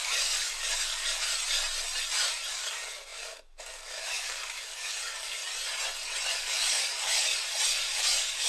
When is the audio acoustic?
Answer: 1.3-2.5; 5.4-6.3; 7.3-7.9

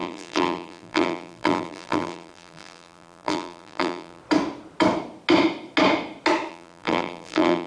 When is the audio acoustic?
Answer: 4.2-6.5

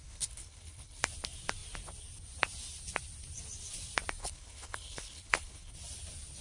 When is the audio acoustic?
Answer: 1.0-4.2; 5.7-6.4

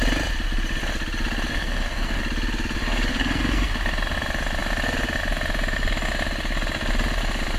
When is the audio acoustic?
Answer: 0.0-1.5; 2.2-3.1; 3.7-7.6

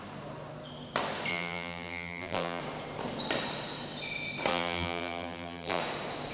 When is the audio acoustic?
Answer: 0.0-1.3; 2.6-4.5; 5.8-6.3

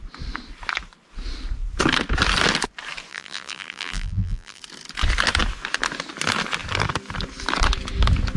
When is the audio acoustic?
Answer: 0.0-3.1; 4.6-8.4